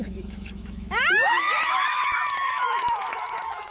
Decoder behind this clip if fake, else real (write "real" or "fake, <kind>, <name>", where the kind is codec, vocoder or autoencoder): fake, autoencoder, DAC-VAE